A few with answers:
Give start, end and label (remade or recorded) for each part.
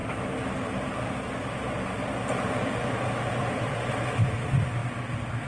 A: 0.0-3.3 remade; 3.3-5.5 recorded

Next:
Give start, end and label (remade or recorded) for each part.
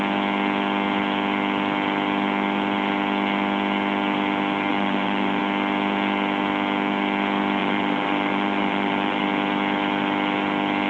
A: 0.0-4.7 recorded; 4.7-5.4 remade; 5.4-7.6 recorded; 7.6-9.2 remade; 9.2-10.9 recorded